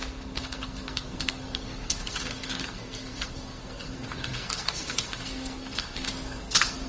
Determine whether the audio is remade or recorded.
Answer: remade